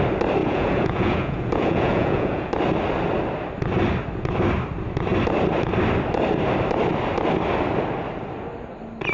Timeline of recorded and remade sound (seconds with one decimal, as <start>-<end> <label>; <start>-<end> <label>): 0.0-0.4 recorded; 0.4-2.5 remade; 2.5-9.1 recorded